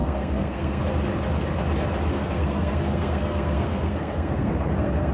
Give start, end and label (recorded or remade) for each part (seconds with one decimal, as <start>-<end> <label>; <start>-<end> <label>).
0.0-0.8 remade; 0.8-2.1 recorded; 2.1-5.1 remade